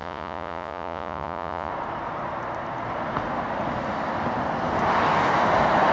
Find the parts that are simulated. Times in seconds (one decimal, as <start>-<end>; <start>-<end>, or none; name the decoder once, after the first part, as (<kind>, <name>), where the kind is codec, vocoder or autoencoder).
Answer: 0.0-1.7 (vocoder, Vocos)